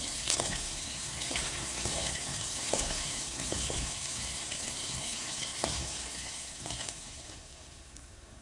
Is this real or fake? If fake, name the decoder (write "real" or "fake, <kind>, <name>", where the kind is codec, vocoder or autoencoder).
fake, codec, SNAC